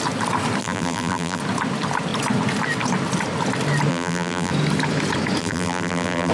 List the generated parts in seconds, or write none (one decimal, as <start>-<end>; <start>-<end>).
0.6-1.4; 3.9-4.5; 5.4-6.3